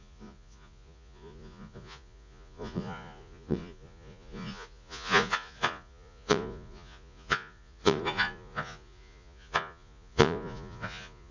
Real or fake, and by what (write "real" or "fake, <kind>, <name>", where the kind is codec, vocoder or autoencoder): fake, vocoder, Vocos